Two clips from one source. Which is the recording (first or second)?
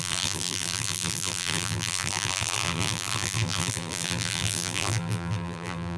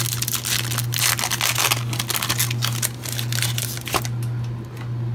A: second